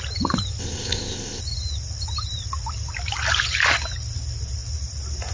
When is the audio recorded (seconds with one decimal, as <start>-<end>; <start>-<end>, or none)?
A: 0.0-0.6; 1.4-5.3